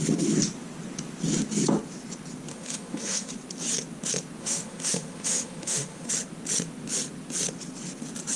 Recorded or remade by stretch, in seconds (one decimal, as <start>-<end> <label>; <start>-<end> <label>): 0.0-2.5 recorded; 2.5-3.3 remade; 3.3-4.4 recorded; 4.4-6.1 remade; 6.1-8.4 recorded

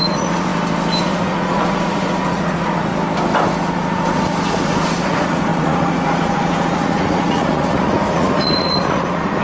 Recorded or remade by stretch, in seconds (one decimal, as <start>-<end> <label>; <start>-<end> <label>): 0.0-0.5 remade; 0.5-1.0 recorded; 1.0-2.9 remade; 2.9-3.6 recorded; 3.6-9.4 remade

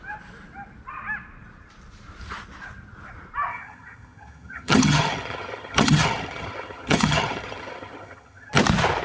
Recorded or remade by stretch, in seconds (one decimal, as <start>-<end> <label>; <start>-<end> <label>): 0.0-3.5 recorded; 3.5-8.5 remade; 8.5-9.0 recorded

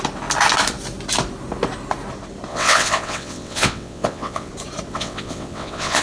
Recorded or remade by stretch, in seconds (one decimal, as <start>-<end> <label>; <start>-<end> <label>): 0.0-2.5 recorded; 2.5-4.5 remade; 4.5-4.9 recorded; 4.9-6.0 remade

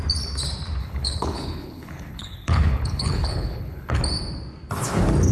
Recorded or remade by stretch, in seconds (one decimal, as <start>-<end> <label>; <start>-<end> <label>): 0.0-0.8 recorded; 0.8-4.0 remade; 4.0-5.3 recorded

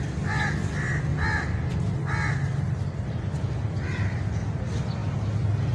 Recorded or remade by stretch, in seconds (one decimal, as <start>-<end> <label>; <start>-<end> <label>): 0.0-5.7 recorded